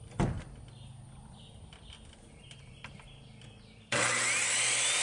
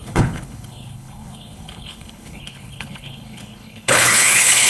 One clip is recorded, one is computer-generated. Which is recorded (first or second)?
first